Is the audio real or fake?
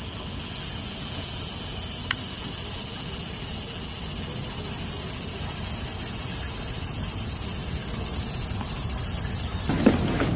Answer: real